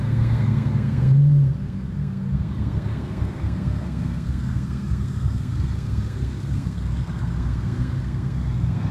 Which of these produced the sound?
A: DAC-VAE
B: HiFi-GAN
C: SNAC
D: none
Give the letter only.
C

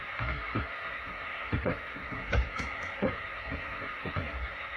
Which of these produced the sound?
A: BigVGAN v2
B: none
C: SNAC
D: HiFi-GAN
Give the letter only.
C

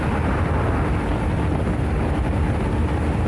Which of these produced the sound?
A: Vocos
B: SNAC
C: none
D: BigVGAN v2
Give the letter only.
C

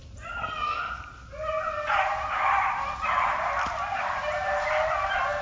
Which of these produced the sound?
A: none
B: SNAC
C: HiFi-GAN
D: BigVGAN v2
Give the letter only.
A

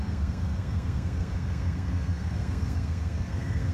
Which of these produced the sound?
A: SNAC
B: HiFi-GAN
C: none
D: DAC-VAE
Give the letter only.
A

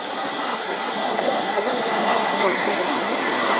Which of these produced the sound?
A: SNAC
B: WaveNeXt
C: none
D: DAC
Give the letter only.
A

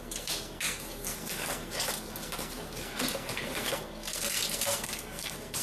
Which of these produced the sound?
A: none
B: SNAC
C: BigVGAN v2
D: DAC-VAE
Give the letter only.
B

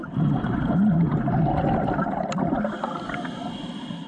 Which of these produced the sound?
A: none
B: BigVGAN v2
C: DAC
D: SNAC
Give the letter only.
A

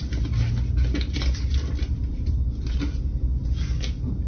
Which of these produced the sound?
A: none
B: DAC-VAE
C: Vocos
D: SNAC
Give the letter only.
A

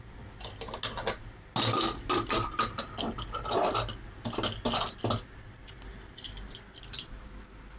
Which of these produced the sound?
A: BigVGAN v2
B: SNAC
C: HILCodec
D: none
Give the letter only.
D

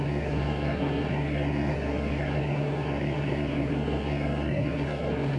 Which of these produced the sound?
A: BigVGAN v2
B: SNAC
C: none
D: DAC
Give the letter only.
B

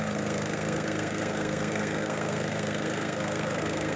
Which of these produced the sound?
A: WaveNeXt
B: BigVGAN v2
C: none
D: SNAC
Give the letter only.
D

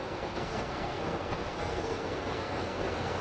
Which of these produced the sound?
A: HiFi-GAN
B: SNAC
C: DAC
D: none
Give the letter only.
B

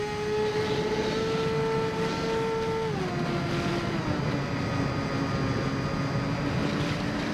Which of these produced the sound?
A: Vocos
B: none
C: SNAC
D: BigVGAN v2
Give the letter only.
B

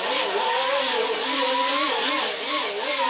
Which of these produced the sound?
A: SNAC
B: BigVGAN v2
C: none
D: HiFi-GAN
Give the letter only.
C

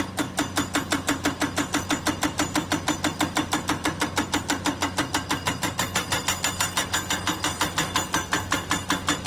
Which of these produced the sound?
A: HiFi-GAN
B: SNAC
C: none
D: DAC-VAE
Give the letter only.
C